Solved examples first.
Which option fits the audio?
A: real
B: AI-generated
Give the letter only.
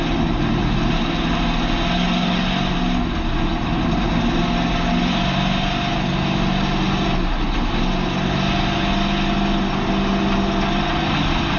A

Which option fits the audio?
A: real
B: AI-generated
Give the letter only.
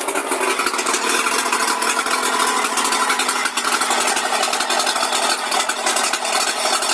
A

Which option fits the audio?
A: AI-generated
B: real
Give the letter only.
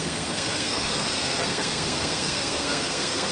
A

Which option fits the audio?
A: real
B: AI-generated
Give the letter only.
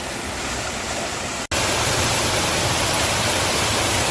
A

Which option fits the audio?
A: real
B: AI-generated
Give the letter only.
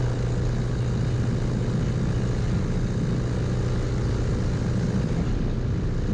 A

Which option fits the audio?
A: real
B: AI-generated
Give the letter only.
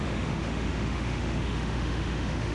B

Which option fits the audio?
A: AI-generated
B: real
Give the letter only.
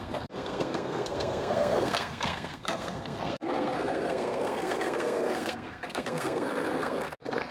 A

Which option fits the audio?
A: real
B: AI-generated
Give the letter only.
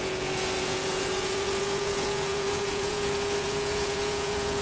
B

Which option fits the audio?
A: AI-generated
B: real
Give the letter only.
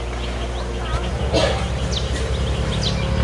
B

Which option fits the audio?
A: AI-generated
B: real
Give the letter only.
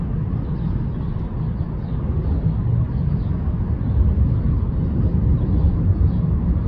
B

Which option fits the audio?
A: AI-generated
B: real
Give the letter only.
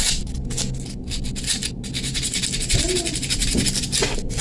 B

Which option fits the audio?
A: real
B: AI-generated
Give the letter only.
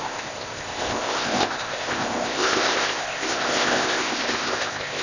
B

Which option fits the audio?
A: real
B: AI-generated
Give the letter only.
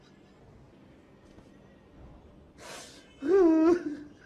A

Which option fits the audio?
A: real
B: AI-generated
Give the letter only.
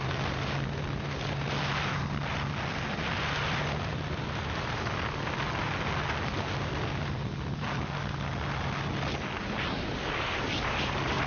A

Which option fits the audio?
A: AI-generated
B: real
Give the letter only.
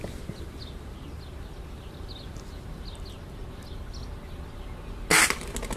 B